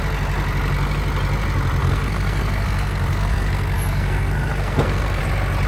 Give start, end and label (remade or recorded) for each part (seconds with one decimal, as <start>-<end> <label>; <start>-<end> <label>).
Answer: 0.0-1.8 recorded; 1.8-5.2 remade; 5.2-5.7 recorded